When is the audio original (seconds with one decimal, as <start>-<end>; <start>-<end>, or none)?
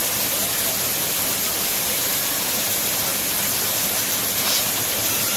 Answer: 0.0-1.7; 3.1-4.3